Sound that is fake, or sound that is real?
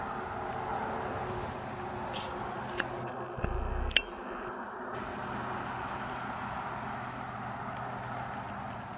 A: real